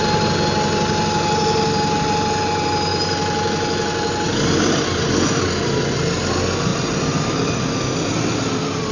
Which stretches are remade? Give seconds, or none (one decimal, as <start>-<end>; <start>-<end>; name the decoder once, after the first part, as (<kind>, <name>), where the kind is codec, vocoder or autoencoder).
none